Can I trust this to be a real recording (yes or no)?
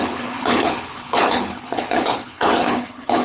no